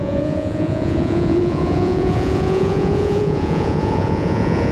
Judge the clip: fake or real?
fake